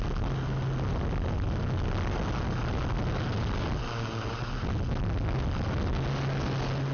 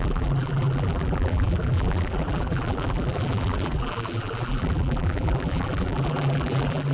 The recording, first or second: first